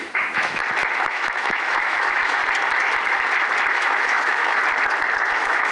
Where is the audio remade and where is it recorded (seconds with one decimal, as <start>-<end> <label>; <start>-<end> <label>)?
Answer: 0.0-0.6 remade; 0.6-1.1 recorded; 1.1-2.4 remade; 2.4-3.7 recorded; 3.7-4.6 remade; 4.6-5.3 recorded; 5.3-5.7 remade